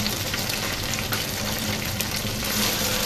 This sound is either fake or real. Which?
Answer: fake